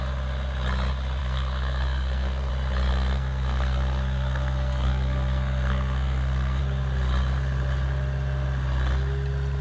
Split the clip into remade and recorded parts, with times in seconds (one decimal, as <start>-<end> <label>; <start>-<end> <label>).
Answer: 0.0-1.2 recorded; 1.2-2.5 remade; 2.5-2.9 recorded; 2.9-6.6 remade; 6.6-9.6 recorded